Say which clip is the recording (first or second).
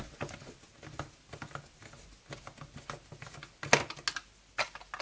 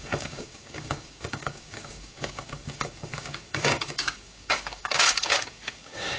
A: first